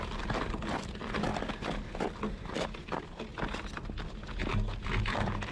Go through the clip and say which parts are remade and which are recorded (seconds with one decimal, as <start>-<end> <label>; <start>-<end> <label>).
0.0-1.3 remade; 1.3-2.3 recorded; 2.3-3.3 remade; 3.3-5.0 recorded; 5.0-5.5 remade